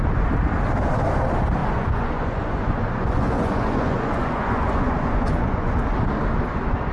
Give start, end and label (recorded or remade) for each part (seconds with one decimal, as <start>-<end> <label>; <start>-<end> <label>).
0.0-1.6 recorded; 1.6-5.7 remade; 5.7-6.9 recorded